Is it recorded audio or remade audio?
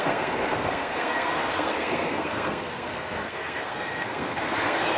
remade